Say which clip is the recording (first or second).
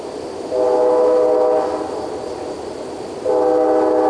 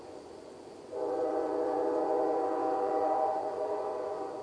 first